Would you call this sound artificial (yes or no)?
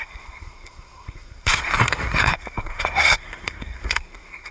yes